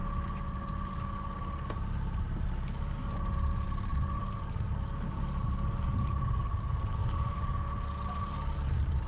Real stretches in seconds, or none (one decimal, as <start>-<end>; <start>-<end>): 0.0-9.1